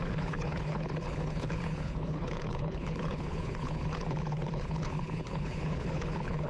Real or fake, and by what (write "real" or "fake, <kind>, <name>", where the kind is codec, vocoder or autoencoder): fake, codec, HILCodec